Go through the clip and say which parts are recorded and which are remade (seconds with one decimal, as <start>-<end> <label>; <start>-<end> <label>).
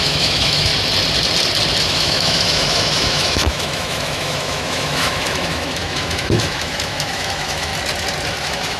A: 0.0-0.7 remade; 0.7-1.8 recorded; 1.8-7.7 remade; 7.7-8.4 recorded; 8.4-8.8 remade